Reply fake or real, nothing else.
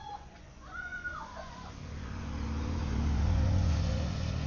fake